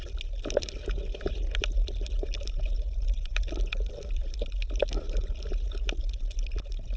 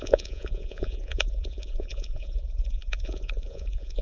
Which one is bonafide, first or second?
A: first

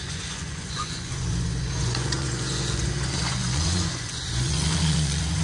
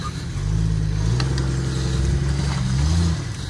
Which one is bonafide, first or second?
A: second